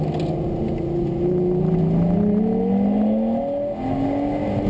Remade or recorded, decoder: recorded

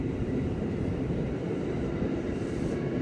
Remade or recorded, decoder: remade, vocoder, BigVGAN v2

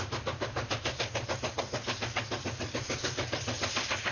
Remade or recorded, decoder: recorded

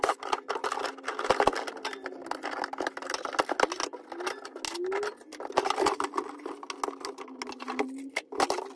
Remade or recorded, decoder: recorded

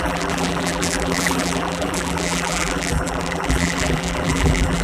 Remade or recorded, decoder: remade, vocoder, BigVGAN v2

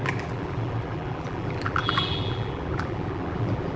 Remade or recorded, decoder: remade, vocoder, BigVGAN v2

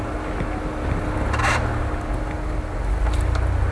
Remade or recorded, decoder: recorded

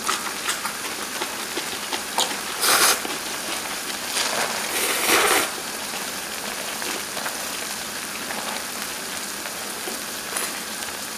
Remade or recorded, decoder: remade, vocoder, BigVGAN v2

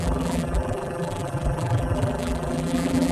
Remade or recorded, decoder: remade, vocoder, BigVGAN v2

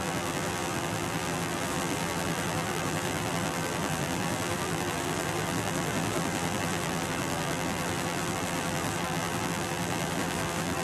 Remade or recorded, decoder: remade, vocoder, BigVGAN v2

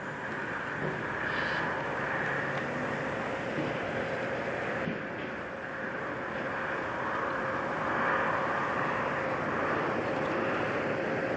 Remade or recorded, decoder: recorded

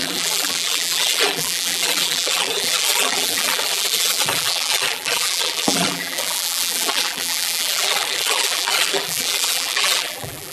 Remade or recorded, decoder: remade, vocoder, BigVGAN v2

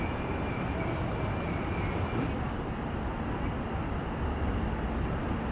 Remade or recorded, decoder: recorded